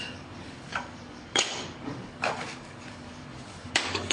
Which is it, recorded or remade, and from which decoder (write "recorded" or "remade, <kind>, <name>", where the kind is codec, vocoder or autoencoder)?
remade, codec, DAC